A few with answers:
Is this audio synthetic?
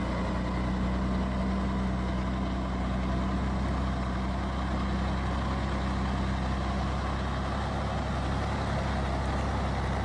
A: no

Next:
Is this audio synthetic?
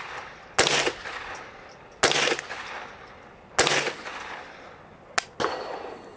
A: no